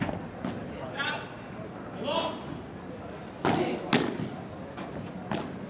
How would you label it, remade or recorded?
recorded